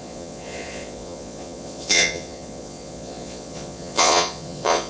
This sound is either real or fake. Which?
fake